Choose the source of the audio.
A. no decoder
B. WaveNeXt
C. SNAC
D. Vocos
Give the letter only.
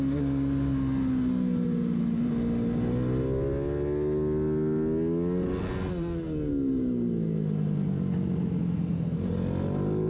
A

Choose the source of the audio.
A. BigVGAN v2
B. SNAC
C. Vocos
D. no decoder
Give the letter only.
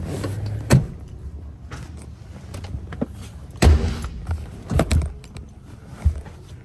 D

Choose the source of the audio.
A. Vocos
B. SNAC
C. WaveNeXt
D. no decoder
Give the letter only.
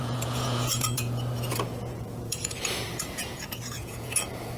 A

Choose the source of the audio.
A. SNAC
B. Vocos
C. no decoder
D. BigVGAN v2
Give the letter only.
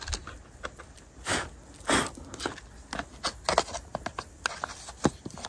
C